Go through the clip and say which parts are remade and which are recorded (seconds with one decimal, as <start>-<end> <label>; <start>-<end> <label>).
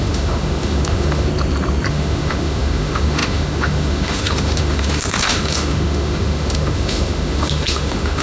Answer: 0.0-1.3 remade; 1.3-1.9 recorded; 1.9-8.2 remade